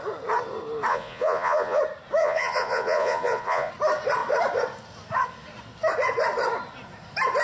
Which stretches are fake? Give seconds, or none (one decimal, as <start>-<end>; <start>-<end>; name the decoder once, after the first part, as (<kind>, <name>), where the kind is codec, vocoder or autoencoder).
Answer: 0.9-1.8 (vocoder, Vocos); 2.2-3.7